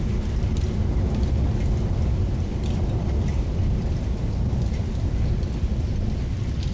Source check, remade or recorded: recorded